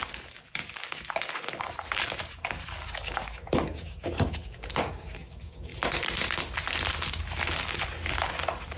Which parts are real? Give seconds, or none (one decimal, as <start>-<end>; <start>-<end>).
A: 5.7-7.6